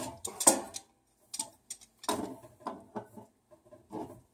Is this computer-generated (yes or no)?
no